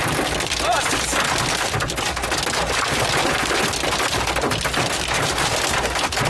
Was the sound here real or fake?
real